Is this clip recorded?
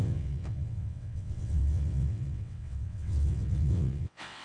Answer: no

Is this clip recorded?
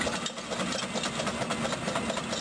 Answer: yes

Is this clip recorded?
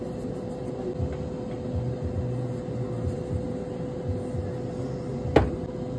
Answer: yes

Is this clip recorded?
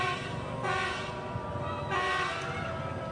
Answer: yes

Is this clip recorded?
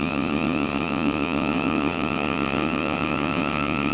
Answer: no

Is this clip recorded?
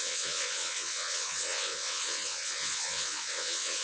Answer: no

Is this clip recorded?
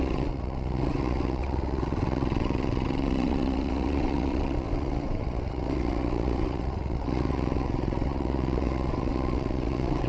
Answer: no